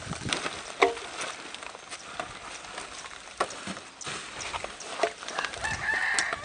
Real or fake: real